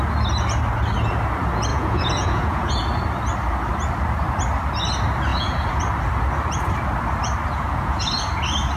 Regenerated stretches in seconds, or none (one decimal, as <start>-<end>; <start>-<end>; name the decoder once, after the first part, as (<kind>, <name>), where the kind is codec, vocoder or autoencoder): 1.7-2.7 (vocoder, Vocos); 5.3-5.8; 7.5-8.1